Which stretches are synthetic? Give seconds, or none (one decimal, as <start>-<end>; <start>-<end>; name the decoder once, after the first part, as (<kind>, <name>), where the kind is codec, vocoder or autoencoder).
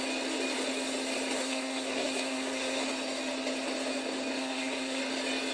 1.4-2.8 (codec, SNAC); 4.4-5.0